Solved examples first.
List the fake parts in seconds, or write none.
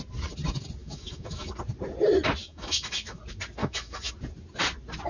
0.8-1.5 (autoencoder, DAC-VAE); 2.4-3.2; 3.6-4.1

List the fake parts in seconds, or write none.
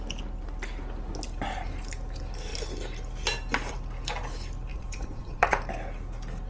4.7-5.6 (vocoder, Vocos)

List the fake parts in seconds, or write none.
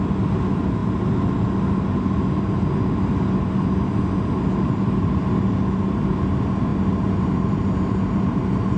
none